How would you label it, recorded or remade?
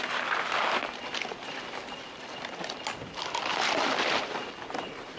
recorded